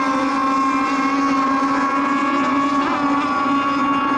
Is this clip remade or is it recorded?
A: recorded